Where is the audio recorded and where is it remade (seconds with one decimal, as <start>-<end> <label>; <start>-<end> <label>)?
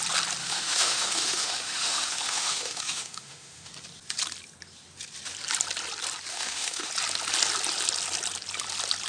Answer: 0.0-0.4 recorded; 0.4-3.7 remade; 3.7-6.3 recorded; 6.3-6.9 remade; 6.9-9.1 recorded